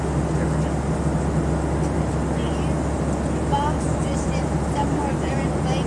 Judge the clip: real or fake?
real